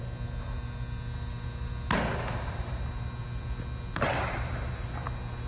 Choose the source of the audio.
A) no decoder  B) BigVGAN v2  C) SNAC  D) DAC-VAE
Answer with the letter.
A